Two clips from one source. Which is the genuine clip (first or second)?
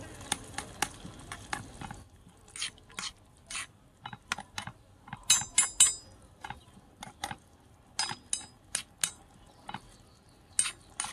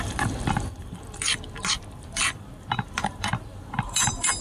first